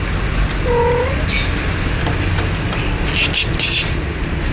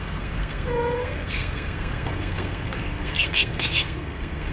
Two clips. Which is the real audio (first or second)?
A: first